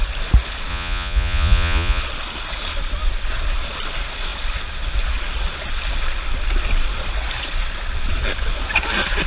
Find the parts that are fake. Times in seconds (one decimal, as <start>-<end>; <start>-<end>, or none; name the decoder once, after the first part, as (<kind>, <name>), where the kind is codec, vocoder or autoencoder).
0.7-2.0 (vocoder, Vocos)